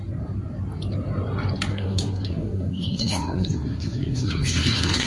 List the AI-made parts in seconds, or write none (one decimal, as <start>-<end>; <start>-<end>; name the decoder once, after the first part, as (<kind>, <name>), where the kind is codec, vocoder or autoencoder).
1.7-5.1 (codec, SNAC)